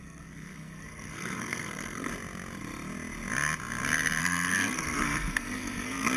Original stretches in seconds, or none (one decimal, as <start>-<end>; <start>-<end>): 2.1-4.2